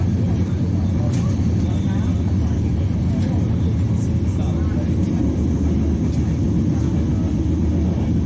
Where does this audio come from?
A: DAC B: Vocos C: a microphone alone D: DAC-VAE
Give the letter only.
C